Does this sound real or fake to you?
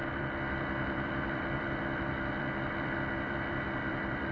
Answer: fake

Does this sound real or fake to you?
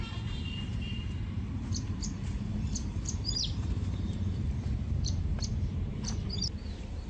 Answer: fake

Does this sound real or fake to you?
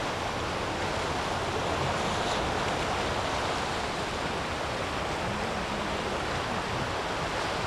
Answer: real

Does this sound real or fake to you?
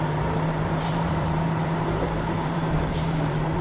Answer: fake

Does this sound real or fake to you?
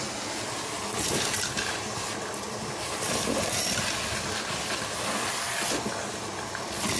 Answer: real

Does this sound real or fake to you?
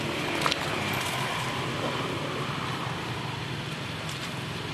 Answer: real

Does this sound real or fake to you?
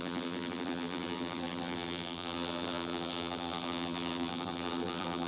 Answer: fake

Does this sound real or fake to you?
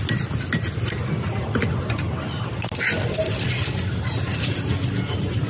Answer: real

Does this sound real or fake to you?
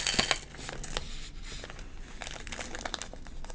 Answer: real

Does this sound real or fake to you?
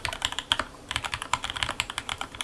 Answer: fake